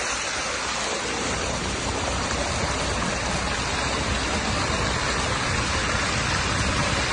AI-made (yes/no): no